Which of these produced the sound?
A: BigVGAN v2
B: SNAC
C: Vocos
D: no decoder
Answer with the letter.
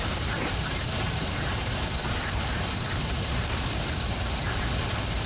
A